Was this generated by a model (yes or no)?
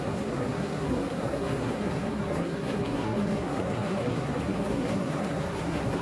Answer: yes